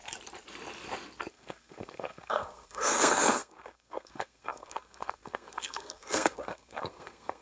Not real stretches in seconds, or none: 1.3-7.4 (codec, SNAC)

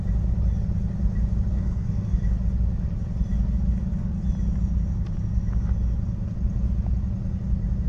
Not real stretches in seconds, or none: 1.5-2.2 (codec, SNAC)